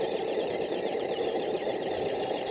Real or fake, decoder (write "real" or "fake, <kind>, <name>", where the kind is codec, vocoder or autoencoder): fake, vocoder, BigVGAN v2